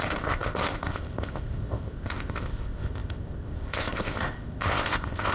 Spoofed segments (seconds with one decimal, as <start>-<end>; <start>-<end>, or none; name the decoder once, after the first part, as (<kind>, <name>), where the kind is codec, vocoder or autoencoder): 0.0-5.3 (codec, ZipCodec)